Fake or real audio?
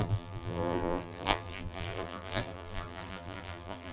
fake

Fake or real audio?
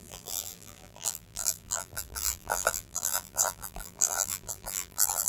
fake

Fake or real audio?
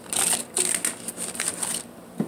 real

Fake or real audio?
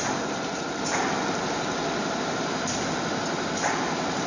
real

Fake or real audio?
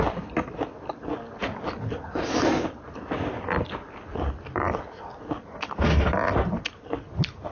real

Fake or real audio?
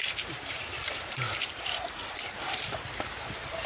fake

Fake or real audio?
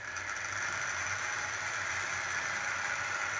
fake